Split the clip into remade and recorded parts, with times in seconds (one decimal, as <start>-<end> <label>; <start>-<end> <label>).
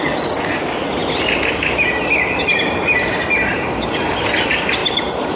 0.0-5.4 recorded